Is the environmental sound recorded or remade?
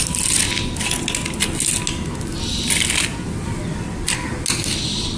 recorded